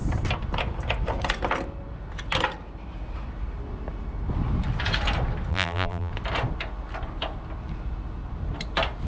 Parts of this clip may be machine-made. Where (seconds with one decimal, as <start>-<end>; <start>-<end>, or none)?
5.5-6.1